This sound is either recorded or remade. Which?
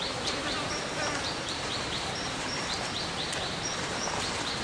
remade